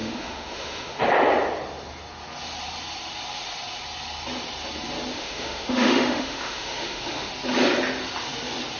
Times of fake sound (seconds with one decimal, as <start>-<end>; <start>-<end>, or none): 0.0-1.0; 5.1-7.3